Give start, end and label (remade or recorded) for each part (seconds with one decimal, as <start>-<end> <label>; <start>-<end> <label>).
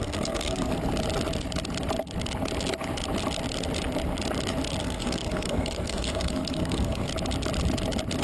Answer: 0.0-0.7 remade; 0.7-4.8 recorded; 4.8-7.1 remade; 7.1-8.2 recorded